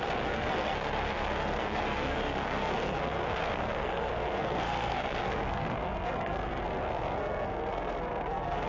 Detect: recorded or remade remade